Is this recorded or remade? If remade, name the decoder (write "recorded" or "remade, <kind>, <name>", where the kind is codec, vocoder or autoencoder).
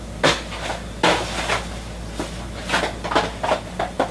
recorded